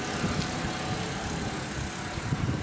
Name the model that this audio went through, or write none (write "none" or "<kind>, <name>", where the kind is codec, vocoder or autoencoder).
none